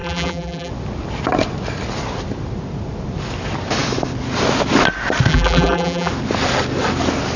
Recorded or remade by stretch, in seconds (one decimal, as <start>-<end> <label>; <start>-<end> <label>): 0.0-0.7 remade; 0.7-5.3 recorded; 5.3-6.1 remade; 6.1-7.4 recorded